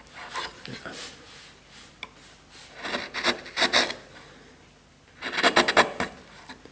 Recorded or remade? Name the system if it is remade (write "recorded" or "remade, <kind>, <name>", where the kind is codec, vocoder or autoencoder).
recorded